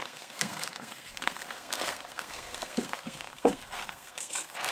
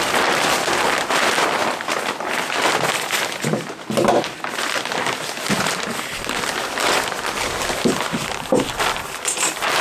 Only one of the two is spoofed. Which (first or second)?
first